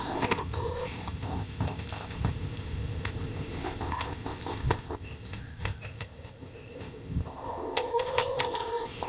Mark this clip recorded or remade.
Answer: remade